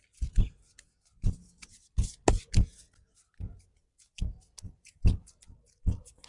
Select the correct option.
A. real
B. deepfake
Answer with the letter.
A